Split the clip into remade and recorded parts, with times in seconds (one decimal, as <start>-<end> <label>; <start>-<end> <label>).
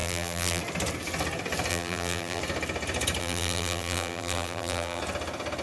0.0-0.6 remade; 0.6-1.7 recorded; 1.7-2.4 remade; 2.4-3.2 recorded; 3.2-5.0 remade; 5.0-5.6 recorded